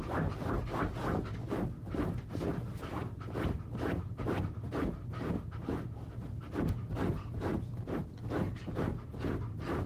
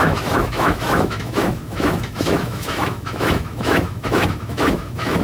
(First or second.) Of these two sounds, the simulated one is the second